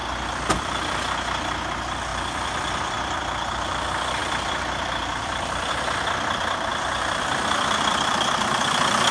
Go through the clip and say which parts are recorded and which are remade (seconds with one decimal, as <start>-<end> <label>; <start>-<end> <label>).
0.0-2.1 recorded; 2.1-3.2 remade; 3.2-4.2 recorded; 4.2-5.7 remade; 5.7-6.7 recorded; 6.7-9.1 remade